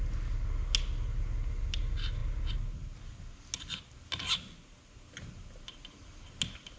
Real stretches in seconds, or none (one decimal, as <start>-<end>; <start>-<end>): 0.0-6.8